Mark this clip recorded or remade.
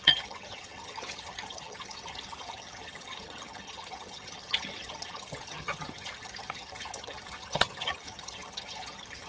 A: remade